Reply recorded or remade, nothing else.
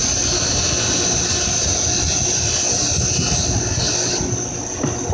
recorded